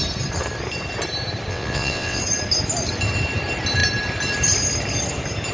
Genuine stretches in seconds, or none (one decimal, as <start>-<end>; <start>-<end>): 0.0-1.5; 2.2-5.5